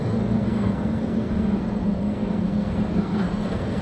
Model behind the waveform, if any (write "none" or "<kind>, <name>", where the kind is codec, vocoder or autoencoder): codec, SNAC